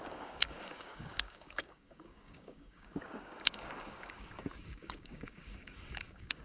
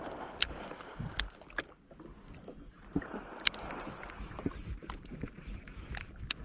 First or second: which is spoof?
first